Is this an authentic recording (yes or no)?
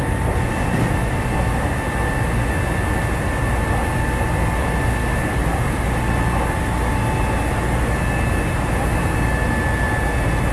yes